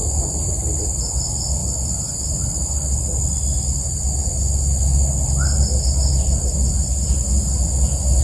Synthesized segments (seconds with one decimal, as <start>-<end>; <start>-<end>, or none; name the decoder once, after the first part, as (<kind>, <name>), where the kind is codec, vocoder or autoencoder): none